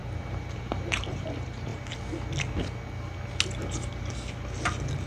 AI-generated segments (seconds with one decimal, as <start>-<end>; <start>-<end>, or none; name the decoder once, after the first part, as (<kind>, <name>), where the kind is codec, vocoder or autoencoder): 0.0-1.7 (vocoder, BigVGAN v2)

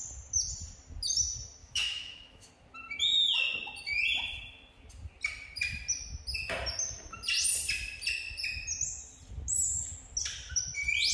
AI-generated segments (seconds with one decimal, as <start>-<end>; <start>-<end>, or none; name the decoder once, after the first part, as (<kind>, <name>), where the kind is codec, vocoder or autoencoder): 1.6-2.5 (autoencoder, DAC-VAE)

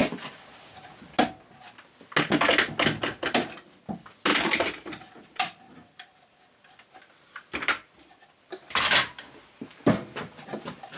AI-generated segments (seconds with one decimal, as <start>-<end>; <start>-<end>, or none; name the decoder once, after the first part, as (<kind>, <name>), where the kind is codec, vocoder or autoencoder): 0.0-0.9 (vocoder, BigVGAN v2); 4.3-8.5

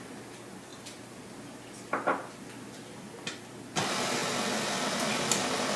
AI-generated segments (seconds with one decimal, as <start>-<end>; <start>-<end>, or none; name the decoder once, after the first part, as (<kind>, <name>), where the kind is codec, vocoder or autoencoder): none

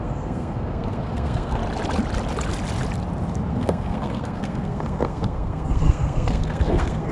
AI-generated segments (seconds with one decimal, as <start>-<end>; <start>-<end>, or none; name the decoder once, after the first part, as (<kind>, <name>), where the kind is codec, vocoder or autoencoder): 0.0-1.6 (codec, SNAC); 3.5-7.1